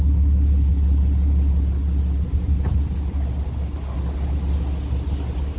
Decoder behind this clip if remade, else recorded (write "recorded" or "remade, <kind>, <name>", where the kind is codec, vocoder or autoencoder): recorded